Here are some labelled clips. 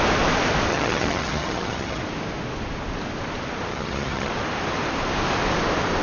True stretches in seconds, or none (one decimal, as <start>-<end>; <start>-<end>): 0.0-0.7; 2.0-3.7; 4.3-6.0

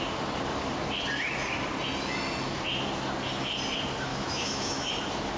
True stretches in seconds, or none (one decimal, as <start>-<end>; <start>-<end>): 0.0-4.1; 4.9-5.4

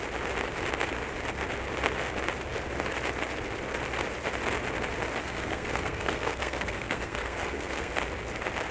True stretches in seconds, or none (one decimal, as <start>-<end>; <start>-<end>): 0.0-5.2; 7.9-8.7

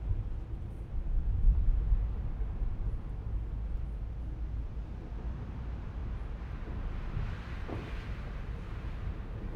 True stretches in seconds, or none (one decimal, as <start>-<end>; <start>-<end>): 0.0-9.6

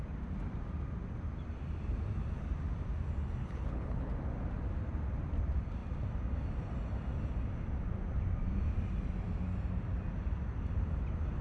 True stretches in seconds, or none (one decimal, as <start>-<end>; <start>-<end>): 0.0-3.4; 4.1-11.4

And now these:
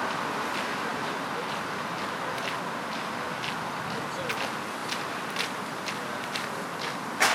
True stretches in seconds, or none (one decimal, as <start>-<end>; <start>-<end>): 0.0-0.9; 1.9-4.8

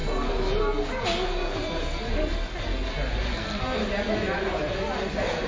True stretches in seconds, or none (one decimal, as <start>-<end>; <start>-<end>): 0.0-3.3; 3.8-5.5

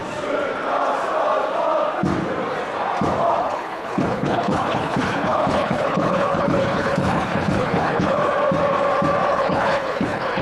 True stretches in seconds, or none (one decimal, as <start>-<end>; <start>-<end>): 0.0-3.4; 8.2-9.3